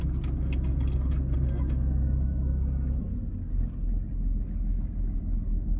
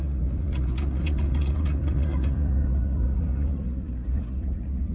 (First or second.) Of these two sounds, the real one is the first